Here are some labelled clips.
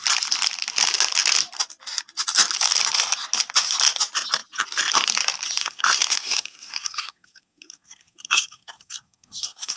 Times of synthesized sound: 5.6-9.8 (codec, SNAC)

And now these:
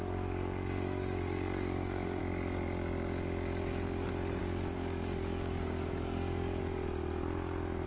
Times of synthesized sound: 0.0-2.2 (codec, DAC); 4.4-6.6

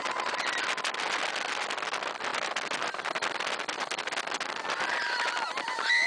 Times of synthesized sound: none

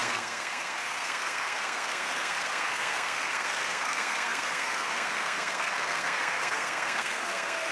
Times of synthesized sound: 0.0-7.7 (codec, SNAC)

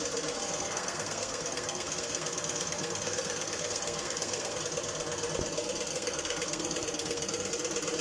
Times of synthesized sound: 0.4-4.6 (codec, SNAC); 5.9-7.5